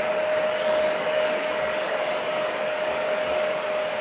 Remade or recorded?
remade